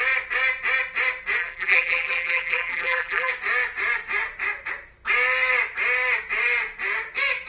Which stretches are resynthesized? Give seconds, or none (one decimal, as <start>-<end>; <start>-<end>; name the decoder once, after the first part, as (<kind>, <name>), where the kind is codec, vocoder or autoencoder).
1.4-3.3 (vocoder, BigVGAN v2)